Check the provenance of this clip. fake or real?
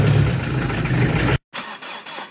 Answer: real